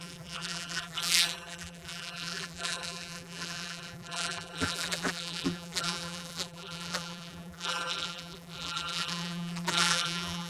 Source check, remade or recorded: remade